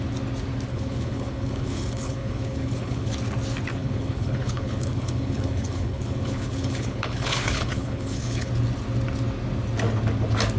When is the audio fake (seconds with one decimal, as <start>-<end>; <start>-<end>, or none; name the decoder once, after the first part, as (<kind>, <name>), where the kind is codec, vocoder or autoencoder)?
0.7-3.1 (codec, HILCodec); 3.8-8.5